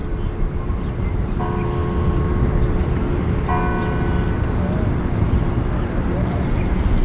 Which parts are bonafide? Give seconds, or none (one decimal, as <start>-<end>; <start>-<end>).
1.4-7.0